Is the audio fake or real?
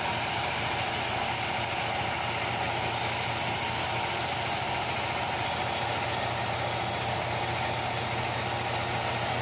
real